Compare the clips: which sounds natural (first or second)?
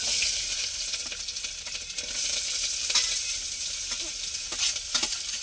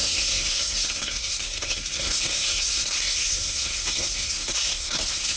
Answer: first